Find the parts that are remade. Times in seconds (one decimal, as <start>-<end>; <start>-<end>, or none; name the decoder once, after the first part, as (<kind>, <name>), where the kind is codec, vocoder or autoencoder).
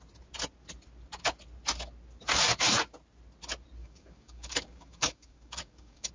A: 3.8-6.1 (codec, DAC)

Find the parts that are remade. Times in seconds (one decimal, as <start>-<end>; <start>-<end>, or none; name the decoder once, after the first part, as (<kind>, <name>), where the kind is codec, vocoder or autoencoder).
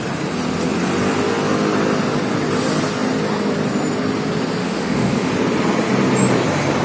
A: 4.6-5.3 (autoencoder, DAC-VAE)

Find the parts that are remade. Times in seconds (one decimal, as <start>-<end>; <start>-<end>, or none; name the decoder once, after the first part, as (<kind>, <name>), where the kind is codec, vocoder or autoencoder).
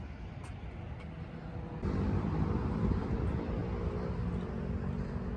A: none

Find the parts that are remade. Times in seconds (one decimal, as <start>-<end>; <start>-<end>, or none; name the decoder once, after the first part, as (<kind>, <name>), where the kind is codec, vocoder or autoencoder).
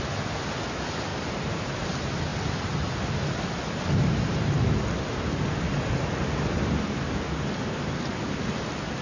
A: 1.1-1.9 (vocoder, BigVGAN v2)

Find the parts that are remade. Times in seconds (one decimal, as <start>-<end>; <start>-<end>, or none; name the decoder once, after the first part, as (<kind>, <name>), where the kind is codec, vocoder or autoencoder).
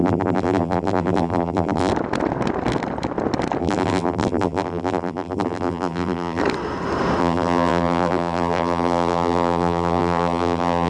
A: 0.0-1.9 (vocoder, BigVGAN v2); 3.6-6.4; 7.2-10.9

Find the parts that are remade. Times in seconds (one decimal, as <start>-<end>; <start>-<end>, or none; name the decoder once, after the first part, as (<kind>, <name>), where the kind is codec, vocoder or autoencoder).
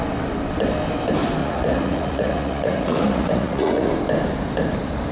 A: 1.4-3.9 (vocoder, Vocos)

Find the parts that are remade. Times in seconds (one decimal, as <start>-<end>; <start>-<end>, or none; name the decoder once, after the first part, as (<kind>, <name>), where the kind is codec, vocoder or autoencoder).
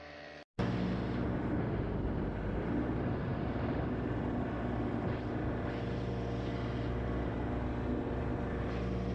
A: 3.3-5.7 (vocoder, BigVGAN v2)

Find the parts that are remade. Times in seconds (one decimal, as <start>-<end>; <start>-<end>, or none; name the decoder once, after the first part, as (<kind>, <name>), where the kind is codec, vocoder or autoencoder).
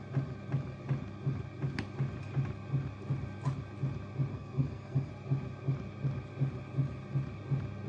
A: 4.3-5.1 (codec, SNAC)